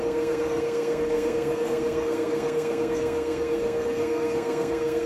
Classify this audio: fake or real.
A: fake